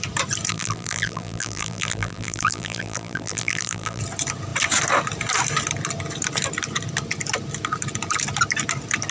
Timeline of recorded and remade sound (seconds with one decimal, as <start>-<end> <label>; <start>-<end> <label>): 0.0-0.5 recorded; 0.5-4.0 remade; 4.0-9.1 recorded